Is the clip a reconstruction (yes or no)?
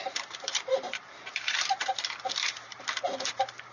yes